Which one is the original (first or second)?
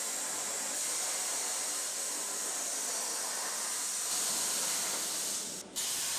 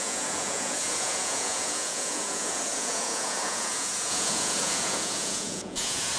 first